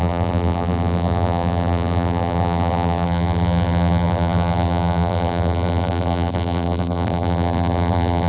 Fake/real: fake